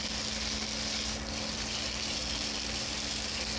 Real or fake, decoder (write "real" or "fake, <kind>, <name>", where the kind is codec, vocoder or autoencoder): real